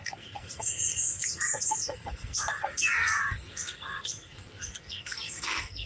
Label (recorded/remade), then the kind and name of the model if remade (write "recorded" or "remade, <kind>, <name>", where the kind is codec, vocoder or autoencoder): remade, codec, SNAC